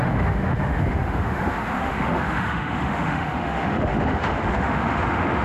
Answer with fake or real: fake